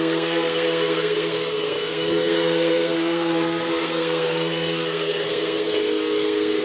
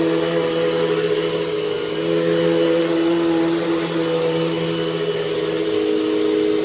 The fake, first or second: first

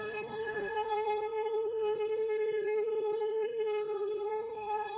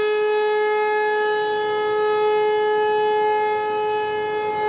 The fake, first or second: first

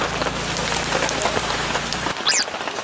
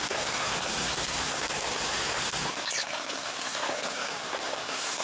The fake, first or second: second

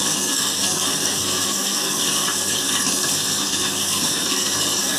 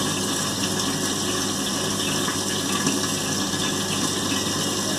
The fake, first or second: first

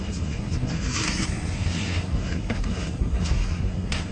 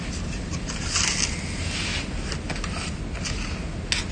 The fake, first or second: first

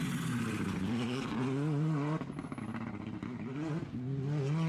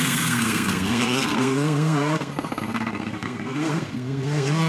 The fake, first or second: second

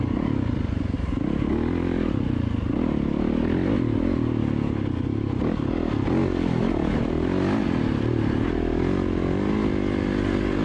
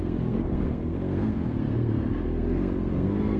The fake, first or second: second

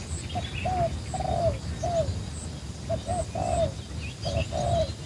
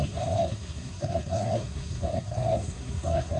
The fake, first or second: second